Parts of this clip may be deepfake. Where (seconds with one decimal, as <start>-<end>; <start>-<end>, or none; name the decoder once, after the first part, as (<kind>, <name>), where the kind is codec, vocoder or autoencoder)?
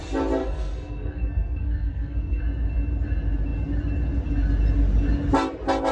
0.4-2.4 (codec, SNAC)